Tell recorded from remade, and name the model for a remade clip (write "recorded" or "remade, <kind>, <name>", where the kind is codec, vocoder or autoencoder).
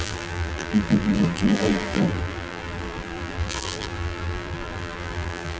remade, vocoder, BigVGAN v2